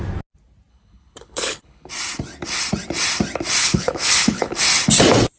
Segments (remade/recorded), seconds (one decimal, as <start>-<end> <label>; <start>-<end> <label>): 0.0-0.7 recorded; 0.7-1.9 remade; 1.9-3.6 recorded; 3.6-4.6 remade; 4.6-5.4 recorded